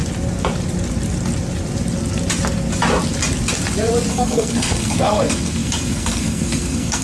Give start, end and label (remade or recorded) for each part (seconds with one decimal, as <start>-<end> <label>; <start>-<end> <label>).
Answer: 0.0-4.1 recorded; 4.1-7.0 remade